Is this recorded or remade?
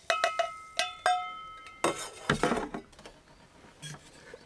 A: recorded